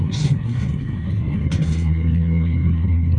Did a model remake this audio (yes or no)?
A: yes